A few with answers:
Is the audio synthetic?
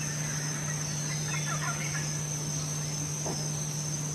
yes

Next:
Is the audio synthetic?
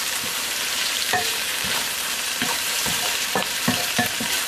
yes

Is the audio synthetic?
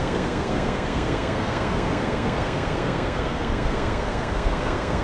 yes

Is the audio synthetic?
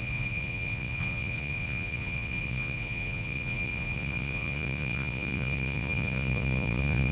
yes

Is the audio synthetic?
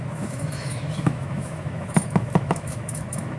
yes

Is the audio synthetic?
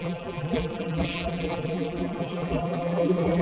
yes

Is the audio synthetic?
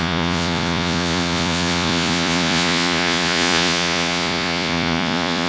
yes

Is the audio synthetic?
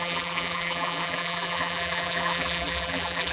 yes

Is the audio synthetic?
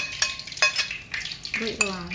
no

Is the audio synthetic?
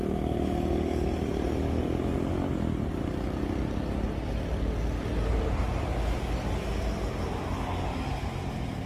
no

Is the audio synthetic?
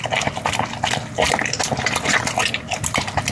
no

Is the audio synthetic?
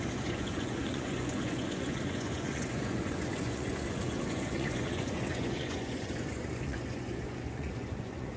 yes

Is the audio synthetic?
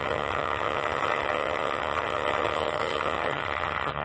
yes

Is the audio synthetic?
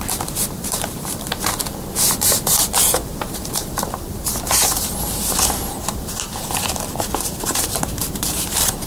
yes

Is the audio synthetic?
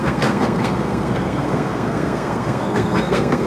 yes